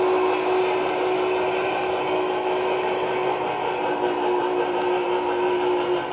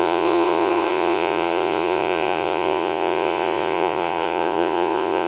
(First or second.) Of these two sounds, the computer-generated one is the second